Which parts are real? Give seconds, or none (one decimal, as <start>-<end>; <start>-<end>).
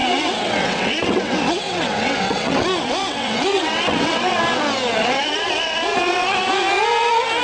4.4-5.0; 6.5-7.4